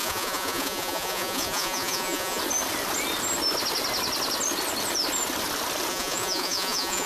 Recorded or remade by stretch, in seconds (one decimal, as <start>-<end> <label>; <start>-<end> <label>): 0.0-2.4 remade; 2.4-5.9 recorded; 5.9-7.1 remade